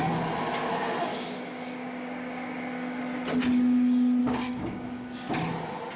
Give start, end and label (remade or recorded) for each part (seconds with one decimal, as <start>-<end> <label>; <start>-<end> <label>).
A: 0.0-1.1 recorded; 1.1-3.0 remade; 3.0-4.2 recorded; 4.2-5.3 remade; 5.3-6.0 recorded